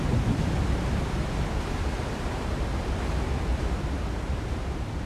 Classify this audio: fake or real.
real